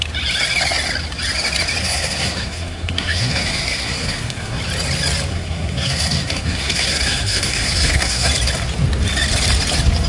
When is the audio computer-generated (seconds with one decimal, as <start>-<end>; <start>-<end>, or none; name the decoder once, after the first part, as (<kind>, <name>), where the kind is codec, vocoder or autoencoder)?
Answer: 1.8-4.6 (codec, SNAC); 5.3-8.3